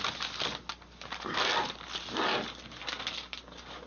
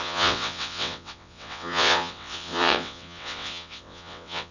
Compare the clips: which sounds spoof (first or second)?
second